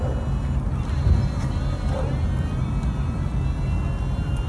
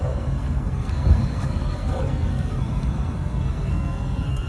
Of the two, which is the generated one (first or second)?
second